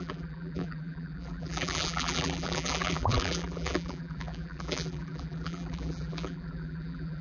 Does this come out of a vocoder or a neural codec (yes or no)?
yes